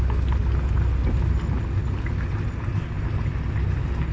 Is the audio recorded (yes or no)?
yes